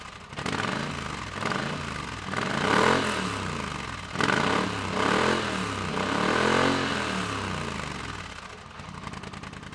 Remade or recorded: recorded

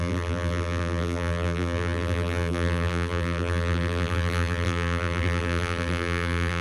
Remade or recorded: remade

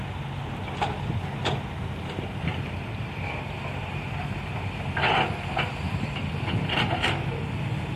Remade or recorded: recorded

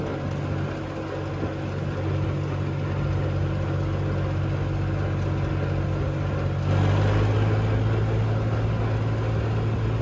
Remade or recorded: recorded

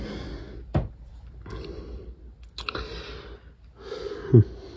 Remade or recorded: recorded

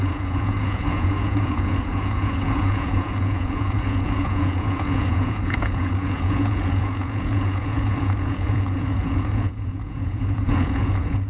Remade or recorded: remade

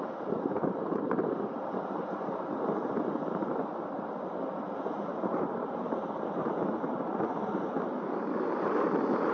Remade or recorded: recorded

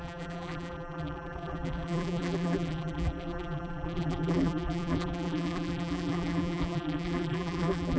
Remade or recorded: remade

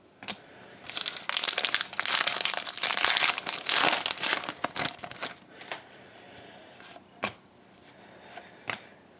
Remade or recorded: recorded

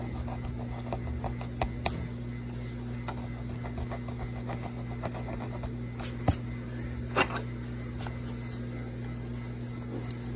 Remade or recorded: recorded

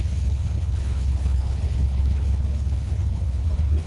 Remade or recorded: remade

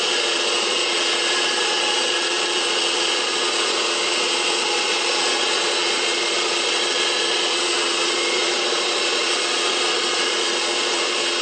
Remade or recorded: remade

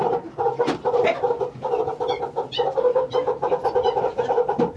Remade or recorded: recorded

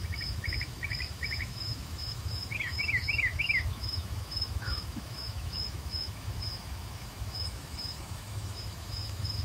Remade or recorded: remade